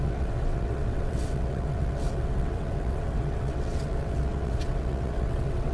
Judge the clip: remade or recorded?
remade